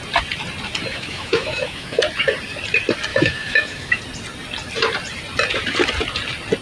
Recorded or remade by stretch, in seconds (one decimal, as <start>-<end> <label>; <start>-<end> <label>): 0.0-0.9 recorded; 0.9-2.0 remade; 2.0-3.1 recorded; 3.1-4.0 remade; 4.0-6.6 recorded